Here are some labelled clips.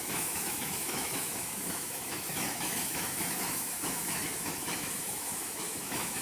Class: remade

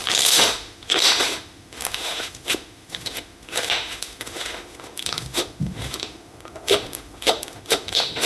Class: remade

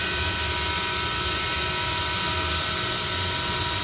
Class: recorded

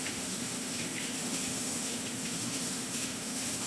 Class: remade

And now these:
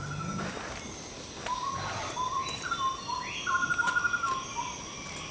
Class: recorded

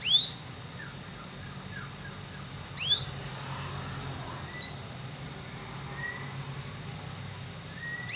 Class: recorded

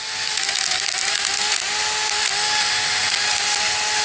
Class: recorded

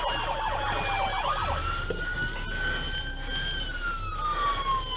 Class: recorded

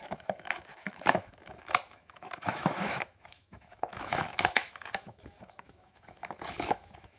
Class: remade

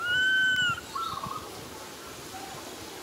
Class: recorded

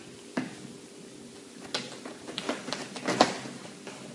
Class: recorded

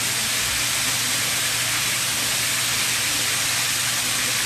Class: recorded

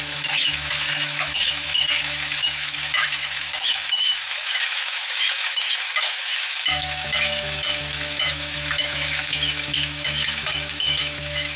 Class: remade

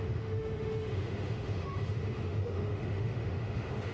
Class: remade